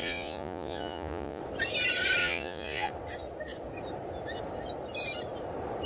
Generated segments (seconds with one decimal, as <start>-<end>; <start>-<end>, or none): 0.0-1.4; 2.2-2.9